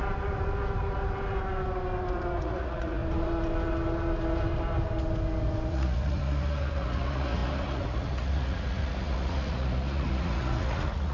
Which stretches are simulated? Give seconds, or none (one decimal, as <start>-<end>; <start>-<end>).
2.4-3.0; 5.7-11.1